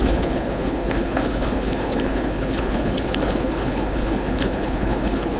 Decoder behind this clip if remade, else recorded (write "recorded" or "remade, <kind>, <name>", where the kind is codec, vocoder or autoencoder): remade, codec, HILCodec